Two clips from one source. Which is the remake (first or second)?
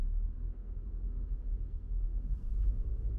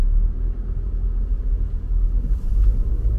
first